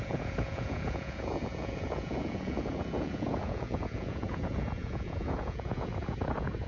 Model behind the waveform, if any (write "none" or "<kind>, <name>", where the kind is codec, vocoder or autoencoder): vocoder, Vocos